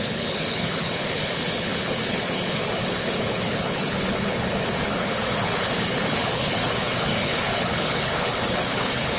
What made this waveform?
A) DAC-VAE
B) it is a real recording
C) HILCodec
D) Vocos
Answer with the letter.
C